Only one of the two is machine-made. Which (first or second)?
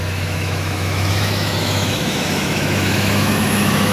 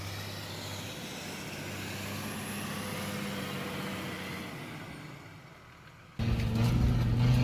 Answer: first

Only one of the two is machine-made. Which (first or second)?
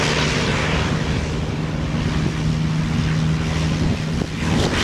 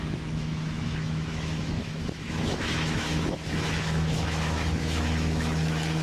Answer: second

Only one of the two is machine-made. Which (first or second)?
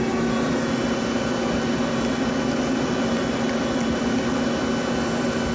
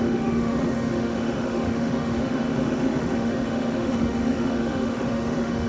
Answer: second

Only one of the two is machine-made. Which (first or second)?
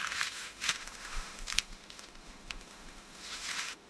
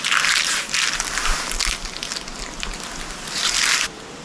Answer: first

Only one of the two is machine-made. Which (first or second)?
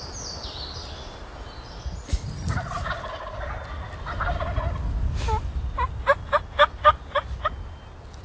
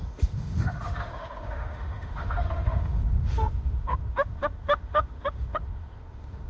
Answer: second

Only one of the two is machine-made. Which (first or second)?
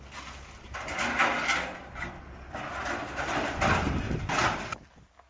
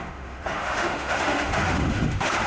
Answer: second